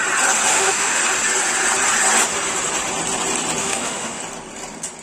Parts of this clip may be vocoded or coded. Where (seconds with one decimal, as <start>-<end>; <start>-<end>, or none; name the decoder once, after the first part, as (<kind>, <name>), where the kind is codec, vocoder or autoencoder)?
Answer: 0.5-1.0 (autoencoder, DAC-VAE); 3.6-4.2